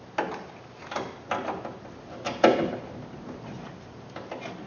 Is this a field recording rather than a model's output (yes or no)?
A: yes